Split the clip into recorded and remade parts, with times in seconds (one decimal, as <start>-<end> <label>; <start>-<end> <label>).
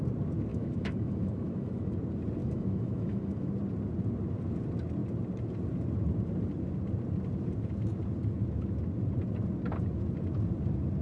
0.0-0.5 recorded; 0.5-1.9 remade; 1.9-2.4 recorded; 2.4-3.5 remade; 3.5-11.0 recorded